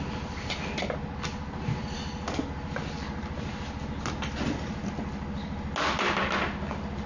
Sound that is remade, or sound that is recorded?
recorded